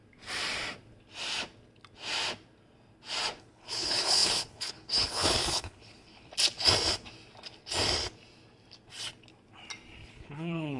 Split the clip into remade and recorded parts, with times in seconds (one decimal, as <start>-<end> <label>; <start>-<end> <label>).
0.0-3.4 recorded; 3.4-6.3 remade; 6.3-10.1 recorded; 10.1-10.8 remade